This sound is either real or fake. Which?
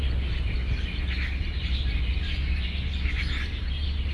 fake